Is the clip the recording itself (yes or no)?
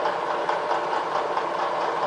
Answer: yes